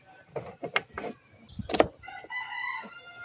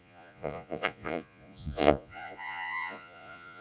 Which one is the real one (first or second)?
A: first